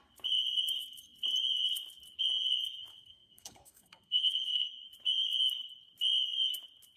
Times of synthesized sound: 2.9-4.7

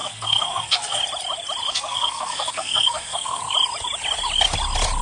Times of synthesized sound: 0.0-1.0; 1.7-3.4

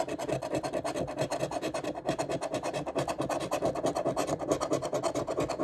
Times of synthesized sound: none